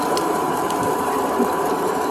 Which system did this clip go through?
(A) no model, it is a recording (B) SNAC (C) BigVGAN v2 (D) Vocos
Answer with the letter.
C